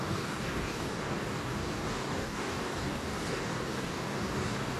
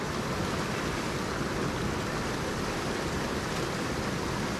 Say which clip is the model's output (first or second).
first